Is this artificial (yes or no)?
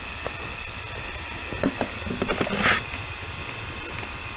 no